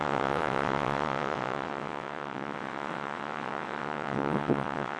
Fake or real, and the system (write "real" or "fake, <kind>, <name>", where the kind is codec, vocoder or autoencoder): fake, vocoder, WaveNeXt